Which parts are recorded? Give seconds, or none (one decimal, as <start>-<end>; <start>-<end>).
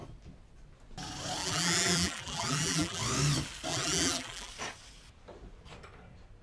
0.0-1.4; 3.0-3.7; 4.5-6.4